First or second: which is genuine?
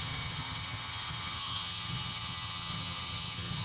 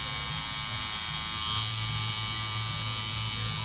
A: second